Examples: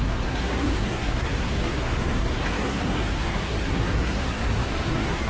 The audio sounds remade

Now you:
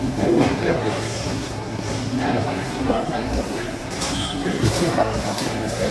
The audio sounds remade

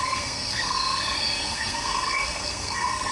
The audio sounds remade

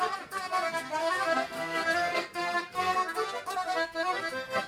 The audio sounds remade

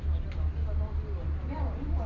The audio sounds recorded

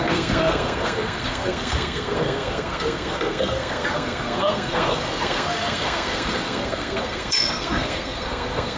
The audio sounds remade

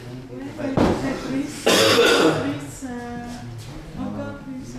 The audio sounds recorded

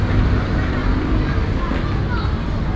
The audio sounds recorded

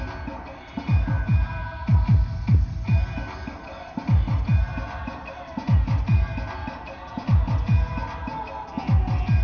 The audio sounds recorded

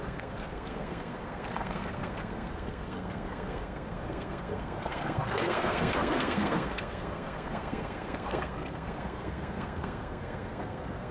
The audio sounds remade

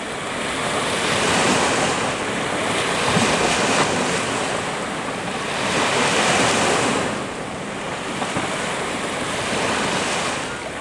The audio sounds recorded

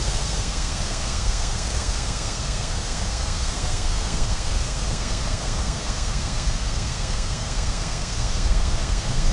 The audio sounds remade